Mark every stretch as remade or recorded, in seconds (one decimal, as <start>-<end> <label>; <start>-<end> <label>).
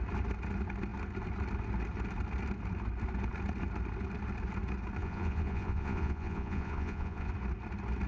0.0-5.0 recorded; 5.0-7.3 remade; 7.3-8.1 recorded